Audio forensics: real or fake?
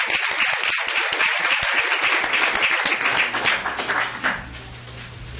real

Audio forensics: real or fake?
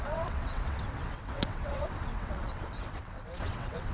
fake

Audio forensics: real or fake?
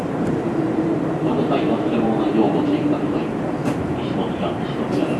fake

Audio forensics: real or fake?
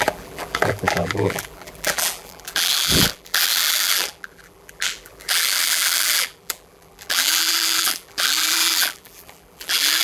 fake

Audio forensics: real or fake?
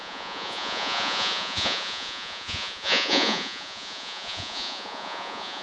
fake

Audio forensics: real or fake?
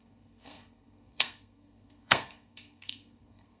fake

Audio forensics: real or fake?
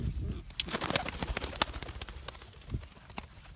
real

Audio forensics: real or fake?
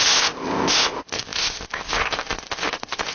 fake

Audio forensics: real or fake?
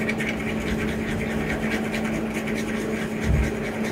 real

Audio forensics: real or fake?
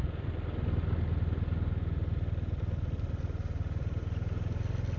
real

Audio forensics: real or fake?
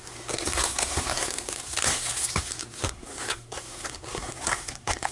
fake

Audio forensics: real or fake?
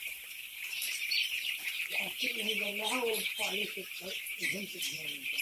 fake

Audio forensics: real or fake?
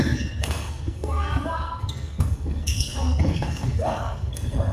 fake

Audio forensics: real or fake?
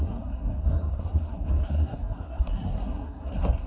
fake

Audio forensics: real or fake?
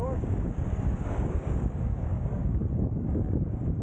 fake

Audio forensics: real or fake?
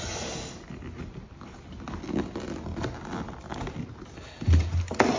real